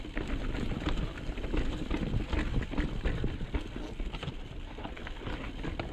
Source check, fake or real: real